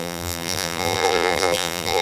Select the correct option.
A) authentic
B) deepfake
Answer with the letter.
B